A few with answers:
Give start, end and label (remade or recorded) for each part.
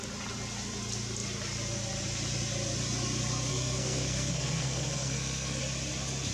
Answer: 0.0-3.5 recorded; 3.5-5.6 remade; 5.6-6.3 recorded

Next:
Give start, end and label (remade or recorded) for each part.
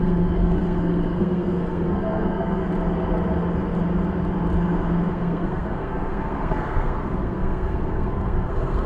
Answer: 0.0-2.6 remade; 2.6-5.1 recorded; 5.1-8.9 remade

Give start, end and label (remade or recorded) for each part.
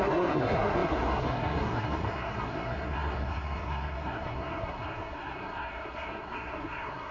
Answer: 0.0-7.1 remade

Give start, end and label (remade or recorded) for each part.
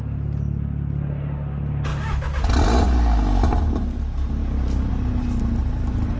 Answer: 0.0-6.2 recorded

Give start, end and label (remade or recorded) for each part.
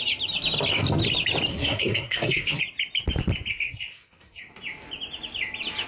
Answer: 0.0-1.5 recorded; 1.5-2.6 remade; 2.6-3.5 recorded; 3.5-4.4 remade; 4.4-5.9 recorded